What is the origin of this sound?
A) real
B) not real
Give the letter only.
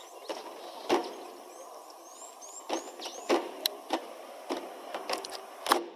A